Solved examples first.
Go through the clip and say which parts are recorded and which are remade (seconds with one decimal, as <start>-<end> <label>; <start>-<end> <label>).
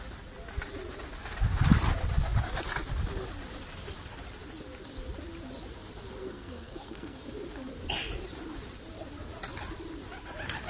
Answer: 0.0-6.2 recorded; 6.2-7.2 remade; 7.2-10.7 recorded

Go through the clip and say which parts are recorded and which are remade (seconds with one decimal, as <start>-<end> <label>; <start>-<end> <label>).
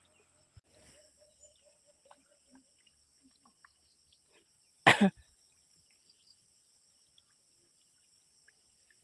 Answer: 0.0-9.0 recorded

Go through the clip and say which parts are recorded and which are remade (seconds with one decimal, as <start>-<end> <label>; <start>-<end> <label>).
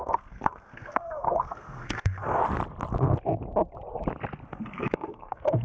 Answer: 0.0-2.4 remade; 2.4-4.5 recorded; 4.5-5.6 remade